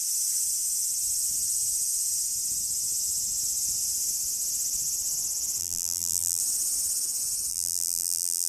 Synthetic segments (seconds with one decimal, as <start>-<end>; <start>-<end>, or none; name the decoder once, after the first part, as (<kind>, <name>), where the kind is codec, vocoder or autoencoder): 5.6-6.4 (vocoder, BigVGAN v2); 7.5-8.5